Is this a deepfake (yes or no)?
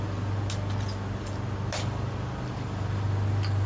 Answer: no